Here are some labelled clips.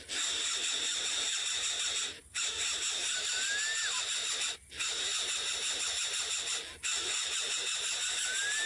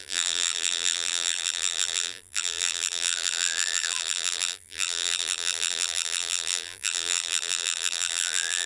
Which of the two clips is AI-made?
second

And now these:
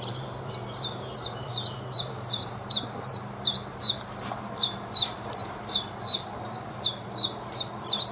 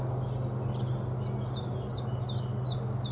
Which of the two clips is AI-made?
first